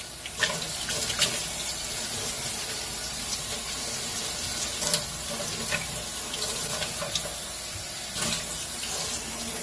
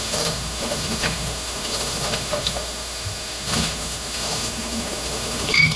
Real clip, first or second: first